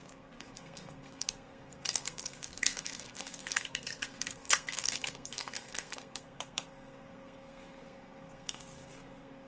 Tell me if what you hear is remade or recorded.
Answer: remade